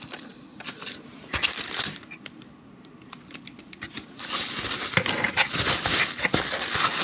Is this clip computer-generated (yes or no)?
no